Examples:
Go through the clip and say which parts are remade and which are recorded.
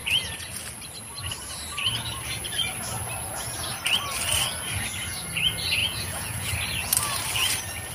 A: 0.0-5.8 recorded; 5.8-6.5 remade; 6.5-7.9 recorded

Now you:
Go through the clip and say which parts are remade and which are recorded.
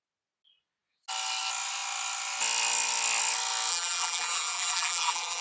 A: 0.0-3.7 recorded; 3.7-5.4 remade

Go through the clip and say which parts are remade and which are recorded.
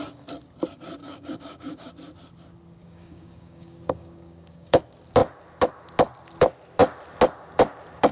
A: 0.0-1.0 recorded; 1.0-1.9 remade; 1.9-2.8 recorded; 2.8-4.8 remade; 4.8-8.1 recorded